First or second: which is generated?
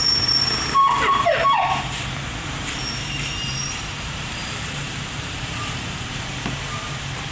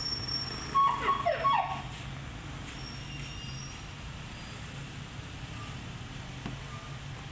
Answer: first